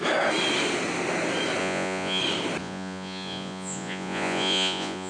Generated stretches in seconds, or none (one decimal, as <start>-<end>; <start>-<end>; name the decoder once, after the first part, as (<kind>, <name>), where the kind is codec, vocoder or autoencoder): 1.6-2.2 (vocoder, Vocos); 2.6-5.1